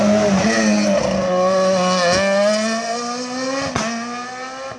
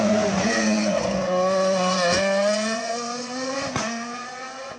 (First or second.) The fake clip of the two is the second